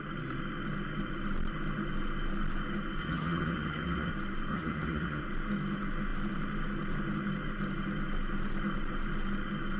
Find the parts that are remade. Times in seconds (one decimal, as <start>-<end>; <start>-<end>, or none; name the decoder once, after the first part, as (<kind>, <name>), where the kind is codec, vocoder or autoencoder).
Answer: 3.0-4.1 (vocoder, HiFi-GAN); 4.5-5.2